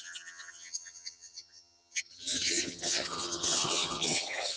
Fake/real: fake